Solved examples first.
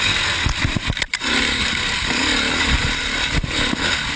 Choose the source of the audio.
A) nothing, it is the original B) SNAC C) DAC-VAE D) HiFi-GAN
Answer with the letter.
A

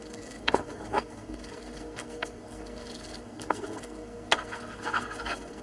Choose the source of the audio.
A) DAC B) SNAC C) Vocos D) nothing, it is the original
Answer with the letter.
B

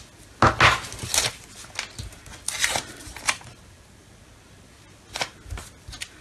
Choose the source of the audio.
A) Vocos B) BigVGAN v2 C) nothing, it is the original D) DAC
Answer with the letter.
C